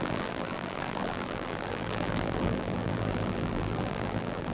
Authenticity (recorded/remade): remade